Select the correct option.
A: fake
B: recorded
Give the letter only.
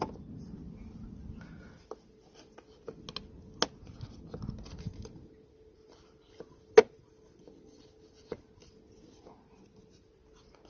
B